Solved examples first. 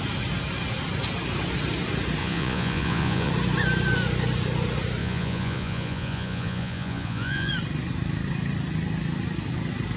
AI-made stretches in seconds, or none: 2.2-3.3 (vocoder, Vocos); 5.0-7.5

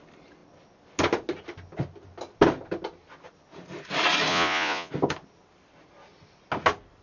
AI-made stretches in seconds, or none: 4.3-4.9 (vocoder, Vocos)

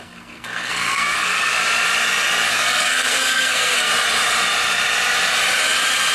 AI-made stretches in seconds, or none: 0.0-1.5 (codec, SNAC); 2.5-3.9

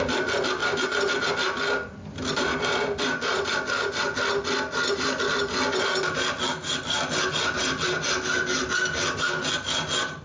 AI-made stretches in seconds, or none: 0.6-1.3 (vocoder, BigVGAN v2)

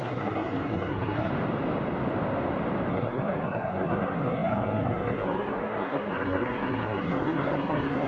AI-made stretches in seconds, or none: 0.0-1.3 (codec, SNAC); 2.9-8.1

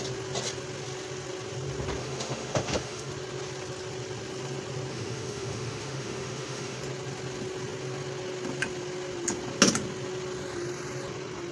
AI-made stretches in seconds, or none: 2.0-3.1 (autoencoder, DAC-VAE); 4.9-6.8

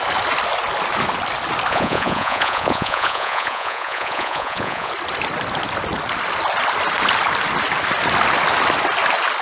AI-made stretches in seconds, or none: 1.7-4.9 (vocoder, Vocos)

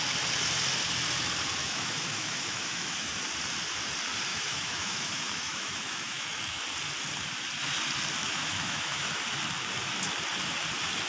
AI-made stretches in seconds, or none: 1.6-3.1 (autoencoder, DAC-VAE); 4.3-6.6; 8.2-9.1